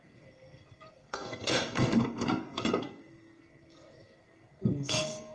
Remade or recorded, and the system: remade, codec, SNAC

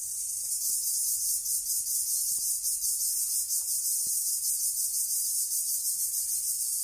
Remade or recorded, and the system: recorded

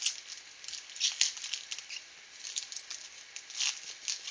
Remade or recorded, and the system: recorded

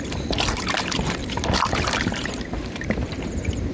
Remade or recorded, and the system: remade, vocoder, BigVGAN v2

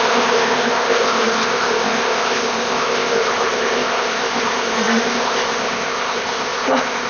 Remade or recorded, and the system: remade, codec, ZipCodec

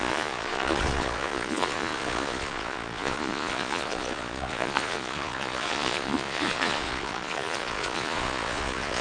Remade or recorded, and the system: remade, vocoder, Vocos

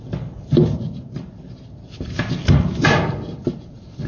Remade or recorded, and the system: recorded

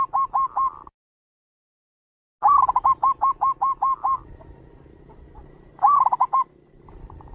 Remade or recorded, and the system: recorded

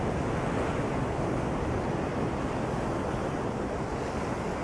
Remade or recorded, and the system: recorded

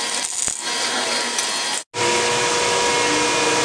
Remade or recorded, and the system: recorded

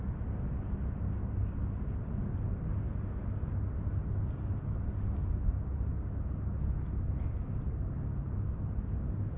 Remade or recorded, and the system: recorded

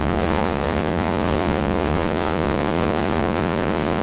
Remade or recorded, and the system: remade, vocoder, Vocos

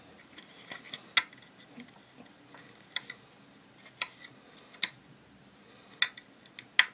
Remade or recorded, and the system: recorded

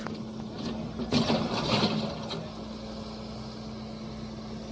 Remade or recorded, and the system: recorded